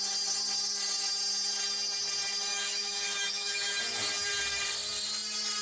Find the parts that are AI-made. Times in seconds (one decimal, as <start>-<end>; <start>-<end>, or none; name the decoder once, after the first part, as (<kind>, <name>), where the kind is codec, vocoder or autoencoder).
2.5-3.8 (autoencoder, DAC-VAE)